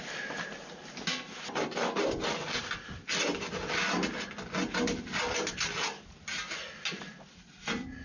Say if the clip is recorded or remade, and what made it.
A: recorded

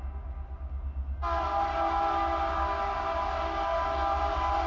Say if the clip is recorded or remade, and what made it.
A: recorded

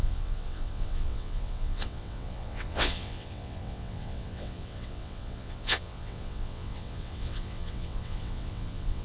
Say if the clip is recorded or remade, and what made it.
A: remade, vocoder, WaveNeXt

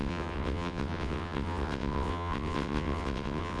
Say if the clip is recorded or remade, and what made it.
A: remade, vocoder, WaveNeXt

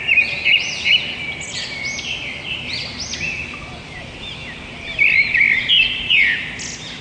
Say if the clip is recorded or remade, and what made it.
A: recorded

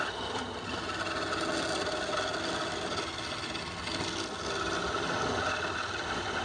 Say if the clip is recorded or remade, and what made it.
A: recorded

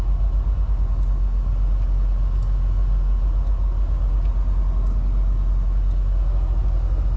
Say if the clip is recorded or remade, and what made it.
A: recorded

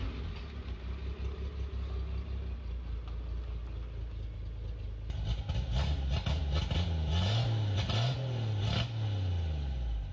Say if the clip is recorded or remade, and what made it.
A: recorded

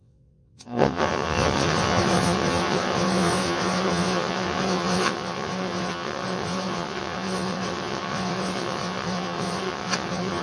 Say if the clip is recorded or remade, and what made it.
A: remade, vocoder, WaveNeXt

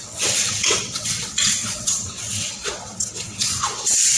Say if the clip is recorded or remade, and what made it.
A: remade, vocoder, WaveNeXt